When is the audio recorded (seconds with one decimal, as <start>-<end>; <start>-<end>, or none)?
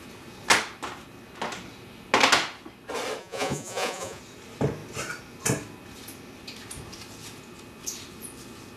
0.0-3.2; 4.2-8.8